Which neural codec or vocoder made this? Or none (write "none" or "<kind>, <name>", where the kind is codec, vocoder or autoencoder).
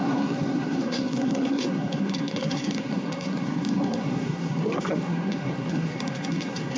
codec, SNAC